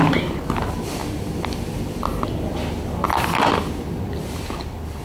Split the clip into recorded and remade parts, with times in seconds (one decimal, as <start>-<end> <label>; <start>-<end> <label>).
0.0-5.0 recorded